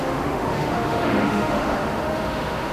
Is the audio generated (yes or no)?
yes